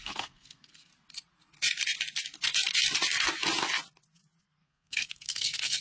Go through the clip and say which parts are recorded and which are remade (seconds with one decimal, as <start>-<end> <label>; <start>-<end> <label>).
0.0-0.9 remade; 0.9-4.4 recorded; 4.4-5.8 remade